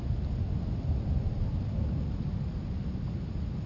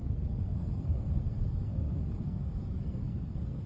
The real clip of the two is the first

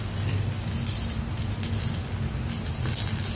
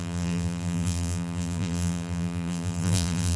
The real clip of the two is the first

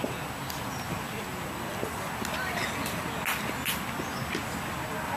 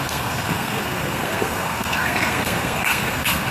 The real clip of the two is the first